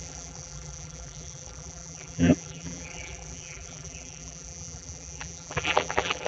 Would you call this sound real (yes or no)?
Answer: no